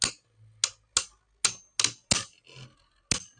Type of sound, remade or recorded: recorded